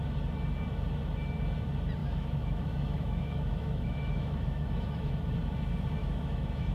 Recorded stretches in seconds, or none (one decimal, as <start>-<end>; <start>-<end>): 0.0-2.0; 5.1-6.0